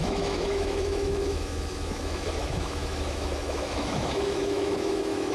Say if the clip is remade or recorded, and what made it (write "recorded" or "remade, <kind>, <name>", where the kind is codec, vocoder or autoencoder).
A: remade, autoencoder, DAC-VAE